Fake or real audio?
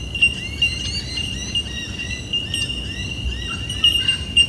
real